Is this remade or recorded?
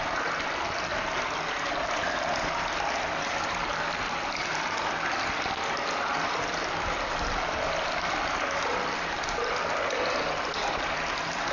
recorded